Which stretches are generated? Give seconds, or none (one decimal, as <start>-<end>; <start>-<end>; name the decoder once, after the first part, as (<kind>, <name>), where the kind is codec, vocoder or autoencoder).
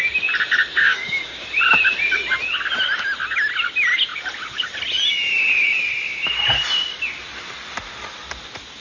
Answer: 0.8-1.4 (codec, DAC)